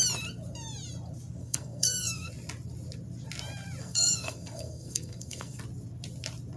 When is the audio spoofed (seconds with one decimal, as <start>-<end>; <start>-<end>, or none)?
1.4-2.3; 3.8-5.6